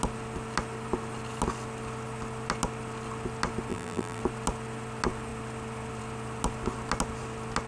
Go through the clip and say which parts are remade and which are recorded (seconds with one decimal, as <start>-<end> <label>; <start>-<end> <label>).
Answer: 0.0-3.7 recorded; 3.7-4.2 remade; 4.2-7.7 recorded